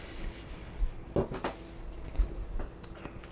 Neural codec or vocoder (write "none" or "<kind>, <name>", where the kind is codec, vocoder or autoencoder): none